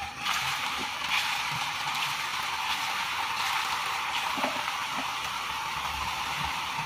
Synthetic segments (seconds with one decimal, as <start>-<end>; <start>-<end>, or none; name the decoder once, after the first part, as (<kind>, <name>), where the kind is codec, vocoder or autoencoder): 0.0-2.3 (vocoder, BigVGAN v2); 4.1-6.9